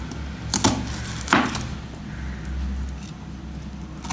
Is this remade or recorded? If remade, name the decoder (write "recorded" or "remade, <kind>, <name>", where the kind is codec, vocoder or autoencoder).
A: recorded